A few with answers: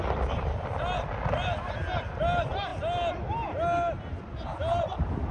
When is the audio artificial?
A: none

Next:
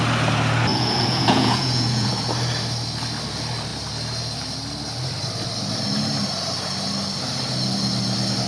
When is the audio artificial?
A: 0.7-2.1 (vocoder, Vocos)

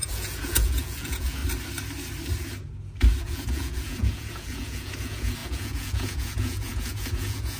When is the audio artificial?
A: 0.0-1.4 (vocoder, Vocos); 3.2-7.6

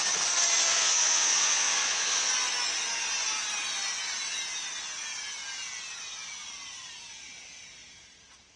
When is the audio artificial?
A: 0.7-2.3 (vocoder, Vocos)